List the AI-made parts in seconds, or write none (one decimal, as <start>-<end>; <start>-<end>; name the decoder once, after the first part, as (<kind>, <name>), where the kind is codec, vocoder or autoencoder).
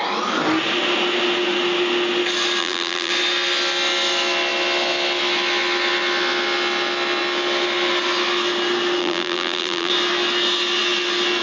2.6-3.1 (vocoder, BigVGAN v2); 9.0-9.9